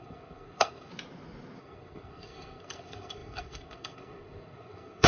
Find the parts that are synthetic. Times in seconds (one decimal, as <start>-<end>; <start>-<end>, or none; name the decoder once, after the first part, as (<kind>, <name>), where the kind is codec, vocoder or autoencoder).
0.0-0.9 (codec, SNAC); 1.6-5.1